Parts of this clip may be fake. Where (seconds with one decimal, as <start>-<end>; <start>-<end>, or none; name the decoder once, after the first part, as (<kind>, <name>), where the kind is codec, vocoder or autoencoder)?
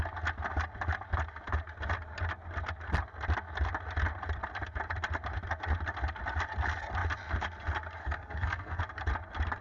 8.0-8.8 (codec, SNAC)